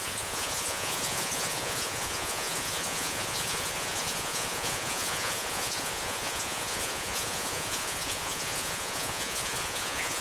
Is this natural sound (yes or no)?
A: no